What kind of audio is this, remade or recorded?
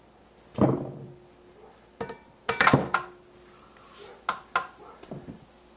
recorded